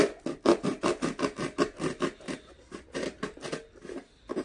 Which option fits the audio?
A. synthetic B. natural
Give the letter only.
B